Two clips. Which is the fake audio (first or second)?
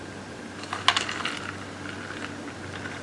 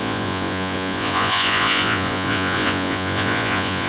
second